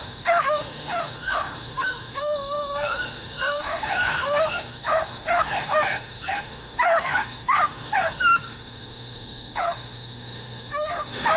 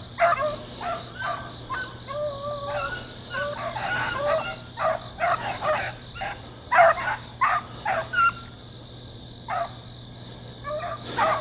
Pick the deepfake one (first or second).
first